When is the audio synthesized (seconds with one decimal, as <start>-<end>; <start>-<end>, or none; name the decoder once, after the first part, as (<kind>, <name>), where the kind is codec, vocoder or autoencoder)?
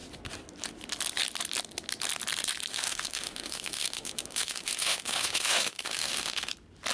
2.7-6.5 (autoencoder, DAC-VAE)